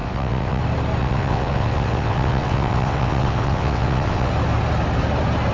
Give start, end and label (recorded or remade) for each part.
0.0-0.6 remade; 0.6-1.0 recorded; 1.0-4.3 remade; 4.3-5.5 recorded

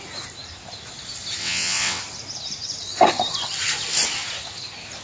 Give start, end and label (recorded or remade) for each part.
0.0-1.4 recorded; 1.4-2.0 remade; 2.0-5.0 recorded

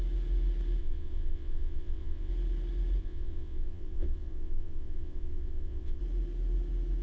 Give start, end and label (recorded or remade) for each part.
0.0-0.8 recorded; 0.8-2.3 remade; 2.3-3.0 recorded; 3.0-6.0 remade; 6.0-7.0 recorded

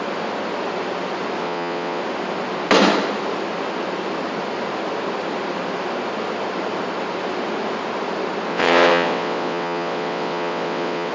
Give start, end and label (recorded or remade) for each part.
0.0-1.4 recorded; 1.4-2.0 remade; 2.0-8.5 recorded; 8.5-11.1 remade

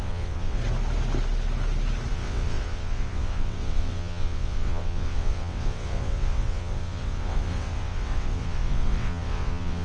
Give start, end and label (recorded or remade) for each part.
0.0-0.6 remade; 0.6-2.1 recorded; 2.1-9.8 remade

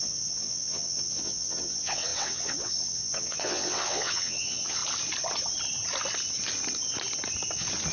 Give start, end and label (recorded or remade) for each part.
0.0-4.8 remade; 4.8-7.9 recorded

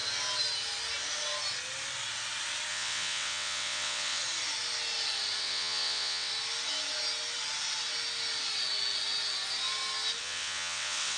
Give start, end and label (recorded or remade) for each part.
0.0-2.7 recorded; 2.7-4.2 remade; 4.2-5.4 recorded; 5.4-6.3 remade; 6.3-10.2 recorded; 10.2-11.2 remade

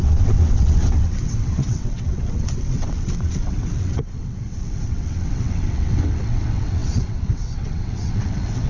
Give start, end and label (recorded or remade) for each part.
0.0-8.7 remade